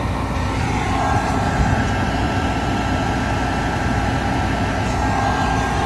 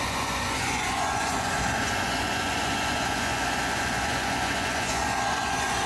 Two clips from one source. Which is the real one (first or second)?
first